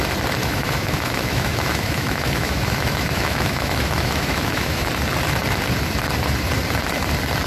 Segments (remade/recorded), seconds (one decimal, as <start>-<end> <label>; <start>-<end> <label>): 0.0-0.4 recorded; 0.4-4.9 remade; 4.9-7.5 recorded